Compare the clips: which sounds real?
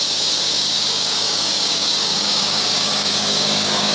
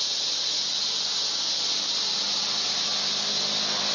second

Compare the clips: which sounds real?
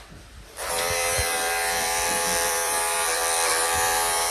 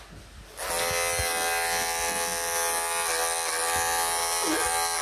second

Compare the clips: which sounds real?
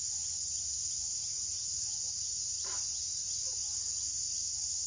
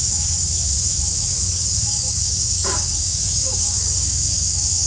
first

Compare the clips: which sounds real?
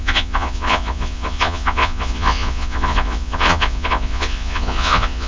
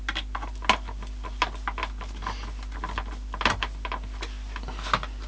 second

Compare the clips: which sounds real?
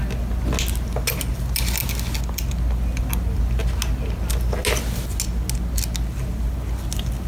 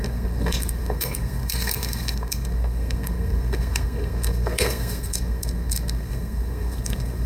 first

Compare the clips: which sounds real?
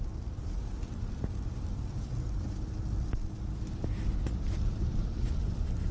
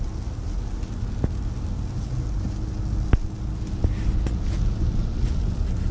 second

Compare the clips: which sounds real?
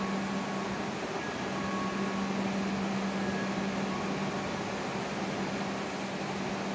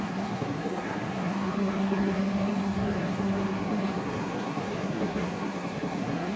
first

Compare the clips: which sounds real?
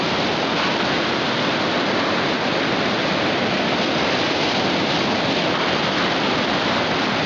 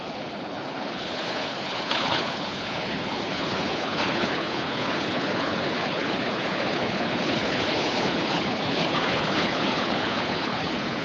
first